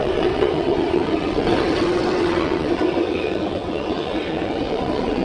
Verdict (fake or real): fake